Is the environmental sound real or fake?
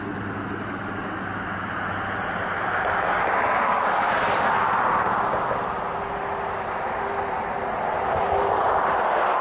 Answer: real